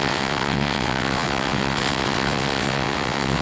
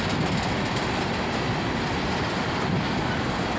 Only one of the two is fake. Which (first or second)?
first